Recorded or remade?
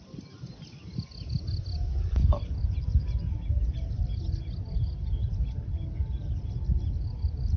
recorded